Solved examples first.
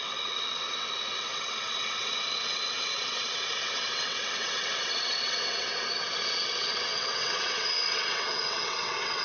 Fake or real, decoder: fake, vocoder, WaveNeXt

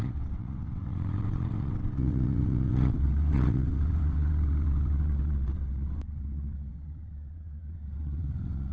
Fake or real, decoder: fake, vocoder, WaveNeXt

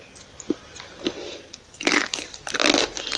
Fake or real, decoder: real